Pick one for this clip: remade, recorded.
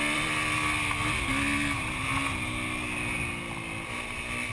recorded